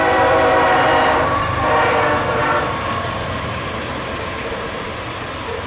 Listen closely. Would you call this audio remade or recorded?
recorded